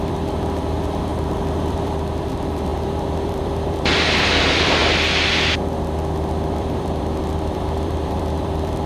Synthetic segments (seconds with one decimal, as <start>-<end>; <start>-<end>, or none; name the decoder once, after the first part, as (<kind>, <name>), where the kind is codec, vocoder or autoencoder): 0.0-1.1 (vocoder, BigVGAN v2); 1.6-4.8; 6.6-8.9